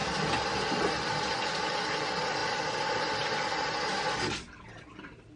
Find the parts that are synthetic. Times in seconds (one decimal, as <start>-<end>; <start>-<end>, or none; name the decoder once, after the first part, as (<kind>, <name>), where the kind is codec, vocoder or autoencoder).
none